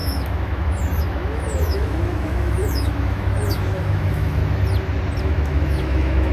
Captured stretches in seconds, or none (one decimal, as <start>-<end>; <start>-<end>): 4.4-5.2